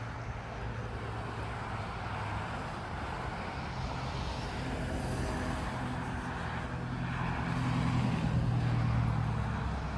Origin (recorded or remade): recorded